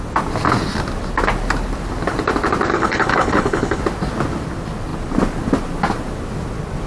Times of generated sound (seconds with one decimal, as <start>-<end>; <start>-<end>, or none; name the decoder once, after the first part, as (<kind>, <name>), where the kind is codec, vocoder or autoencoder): 2.7-3.8 (codec, HILCodec)